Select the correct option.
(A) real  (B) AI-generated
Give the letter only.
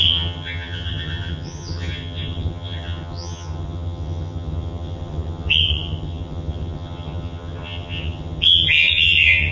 B